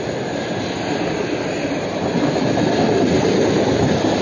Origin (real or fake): real